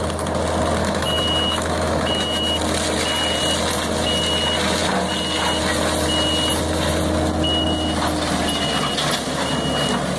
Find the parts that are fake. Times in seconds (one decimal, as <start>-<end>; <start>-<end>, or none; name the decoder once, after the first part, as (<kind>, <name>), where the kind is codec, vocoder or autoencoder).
0.8-2.6 (autoencoder, DAC-VAE)

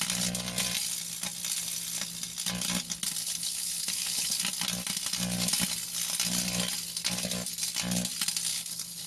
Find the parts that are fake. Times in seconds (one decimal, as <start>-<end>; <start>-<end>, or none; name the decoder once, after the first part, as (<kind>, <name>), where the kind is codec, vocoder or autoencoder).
3.2-4.4 (codec, HILCodec); 8.5-9.1